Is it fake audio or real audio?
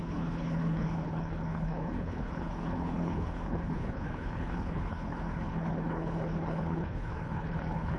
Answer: fake